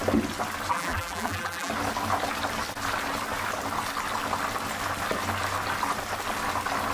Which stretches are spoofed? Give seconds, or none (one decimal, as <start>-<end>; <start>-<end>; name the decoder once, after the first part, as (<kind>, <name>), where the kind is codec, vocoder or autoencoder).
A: 0.7-1.7 (vocoder, BigVGAN v2)